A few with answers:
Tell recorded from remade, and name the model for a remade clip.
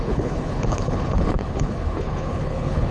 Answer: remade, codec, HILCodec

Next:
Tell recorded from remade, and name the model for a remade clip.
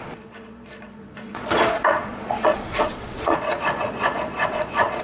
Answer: remade, vocoder, Vocos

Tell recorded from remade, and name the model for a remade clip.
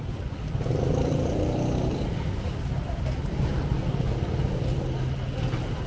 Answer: remade, vocoder, BigVGAN v2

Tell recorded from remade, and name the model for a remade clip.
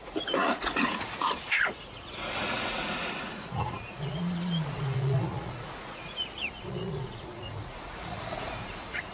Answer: remade, vocoder, Vocos